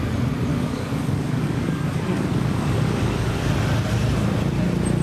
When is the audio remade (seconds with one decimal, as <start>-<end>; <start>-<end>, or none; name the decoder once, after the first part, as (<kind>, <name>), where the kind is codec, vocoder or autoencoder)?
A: 0.5-3.5 (codec, DAC)